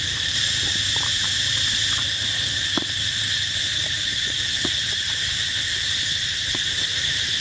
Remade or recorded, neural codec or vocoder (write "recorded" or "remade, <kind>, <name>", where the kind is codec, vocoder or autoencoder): remade, vocoder, BigVGAN v2